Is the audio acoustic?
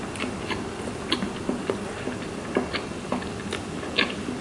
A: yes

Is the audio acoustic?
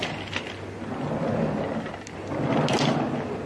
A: yes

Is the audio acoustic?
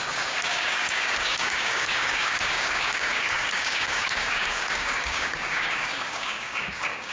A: no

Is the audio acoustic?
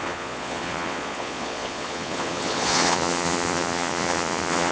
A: no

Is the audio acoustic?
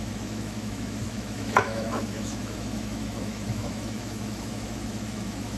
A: no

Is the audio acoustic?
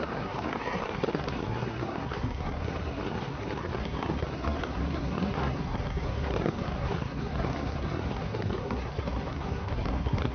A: no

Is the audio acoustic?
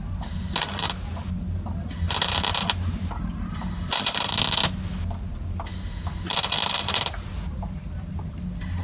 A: yes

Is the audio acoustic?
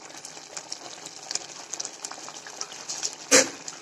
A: yes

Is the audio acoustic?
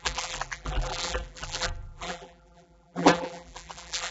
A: no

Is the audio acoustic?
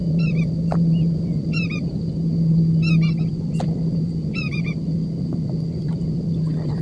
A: yes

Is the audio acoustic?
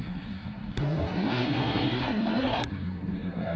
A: no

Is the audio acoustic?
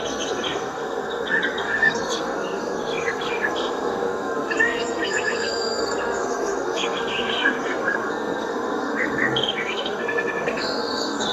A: no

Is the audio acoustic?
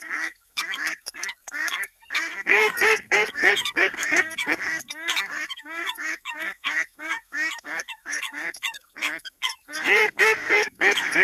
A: no